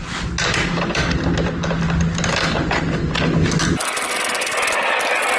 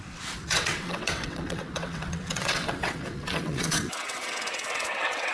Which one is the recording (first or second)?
first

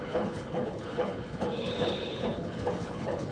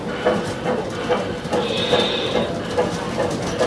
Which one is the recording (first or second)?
second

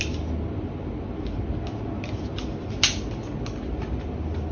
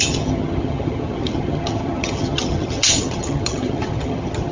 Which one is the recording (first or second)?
first